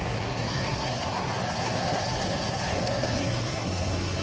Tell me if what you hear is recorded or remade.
remade